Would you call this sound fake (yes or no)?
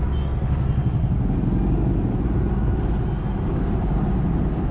no